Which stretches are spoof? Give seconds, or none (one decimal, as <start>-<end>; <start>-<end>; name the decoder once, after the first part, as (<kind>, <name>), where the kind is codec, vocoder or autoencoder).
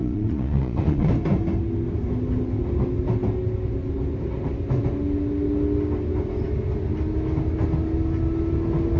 0.0-1.1 (vocoder, Vocos)